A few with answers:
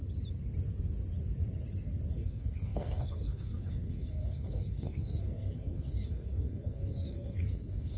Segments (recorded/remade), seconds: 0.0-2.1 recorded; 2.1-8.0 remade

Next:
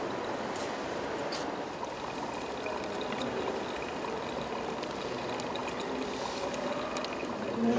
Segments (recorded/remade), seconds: 0.0-7.8 recorded

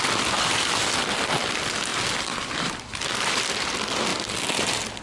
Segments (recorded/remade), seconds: 0.0-5.0 recorded

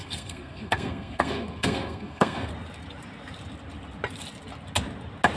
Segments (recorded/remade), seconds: 0.0-2.5 remade; 2.5-5.4 recorded

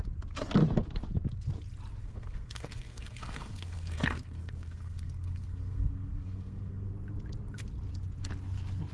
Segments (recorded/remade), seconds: 0.0-2.0 recorded; 2.0-6.9 remade; 6.9-8.9 recorded

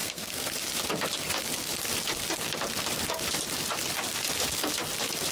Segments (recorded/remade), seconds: 0.0-0.5 remade; 0.5-5.3 recorded